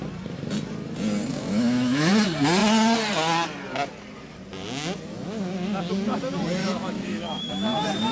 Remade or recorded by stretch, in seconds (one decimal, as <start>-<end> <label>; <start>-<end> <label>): 0.0-1.3 recorded; 1.3-2.1 remade; 2.1-6.6 recorded; 6.6-7.5 remade; 7.5-8.1 recorded